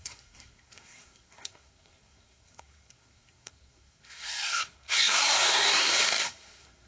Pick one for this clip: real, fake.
fake